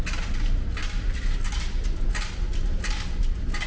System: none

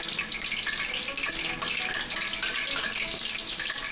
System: none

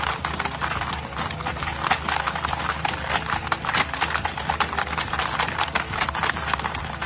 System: none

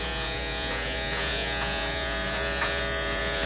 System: vocoder, Vocos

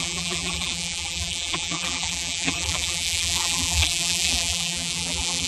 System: vocoder, BigVGAN v2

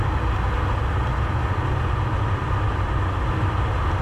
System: none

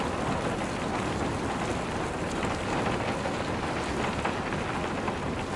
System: none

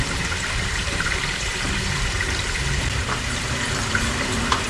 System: vocoder, BigVGAN v2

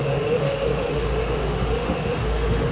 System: autoencoder, DAC-VAE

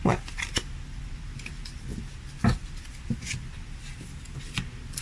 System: none